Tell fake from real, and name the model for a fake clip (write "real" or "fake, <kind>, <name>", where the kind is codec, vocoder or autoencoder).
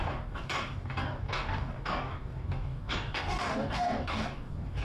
fake, codec, DAC